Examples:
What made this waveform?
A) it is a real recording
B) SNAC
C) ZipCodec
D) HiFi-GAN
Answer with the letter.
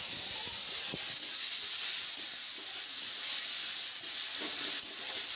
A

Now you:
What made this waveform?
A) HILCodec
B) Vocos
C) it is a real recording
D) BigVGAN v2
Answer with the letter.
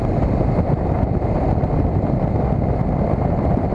C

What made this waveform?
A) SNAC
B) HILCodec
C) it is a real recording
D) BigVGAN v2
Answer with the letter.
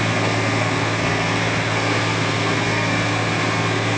A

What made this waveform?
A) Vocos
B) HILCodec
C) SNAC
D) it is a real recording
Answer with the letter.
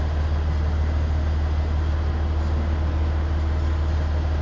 D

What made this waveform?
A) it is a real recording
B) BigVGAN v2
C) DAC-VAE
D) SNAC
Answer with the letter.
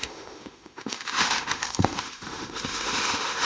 C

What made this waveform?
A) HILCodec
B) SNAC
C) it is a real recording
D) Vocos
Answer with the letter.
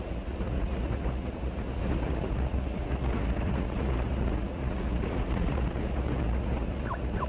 D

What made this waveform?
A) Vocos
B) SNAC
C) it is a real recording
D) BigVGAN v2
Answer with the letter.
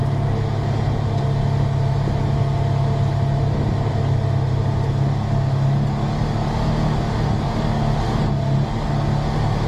C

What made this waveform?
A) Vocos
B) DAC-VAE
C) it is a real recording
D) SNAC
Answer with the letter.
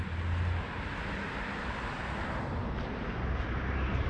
C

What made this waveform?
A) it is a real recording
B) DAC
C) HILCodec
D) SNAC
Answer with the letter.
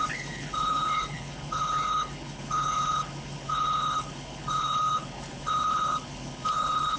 C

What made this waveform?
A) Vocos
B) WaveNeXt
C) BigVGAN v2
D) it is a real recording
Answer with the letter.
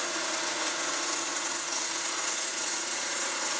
A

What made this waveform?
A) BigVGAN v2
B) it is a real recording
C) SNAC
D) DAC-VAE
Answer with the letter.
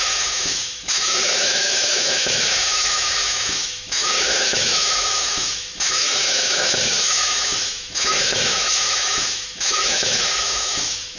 D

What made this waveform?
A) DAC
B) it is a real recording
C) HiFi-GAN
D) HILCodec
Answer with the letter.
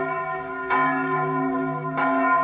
A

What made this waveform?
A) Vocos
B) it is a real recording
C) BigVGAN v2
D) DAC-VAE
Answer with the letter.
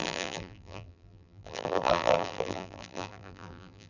C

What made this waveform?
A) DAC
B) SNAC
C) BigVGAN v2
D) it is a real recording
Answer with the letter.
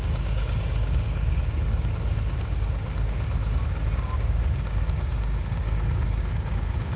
A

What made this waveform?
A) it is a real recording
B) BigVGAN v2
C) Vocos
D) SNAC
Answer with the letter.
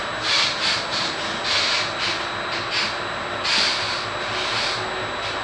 A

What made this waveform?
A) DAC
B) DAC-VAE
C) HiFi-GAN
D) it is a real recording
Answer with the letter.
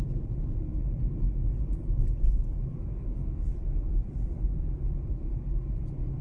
D